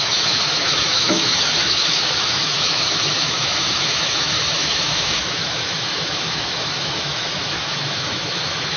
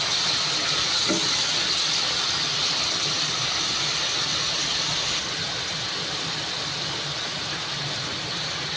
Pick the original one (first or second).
second